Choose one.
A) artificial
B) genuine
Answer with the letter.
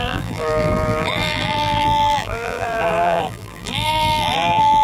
A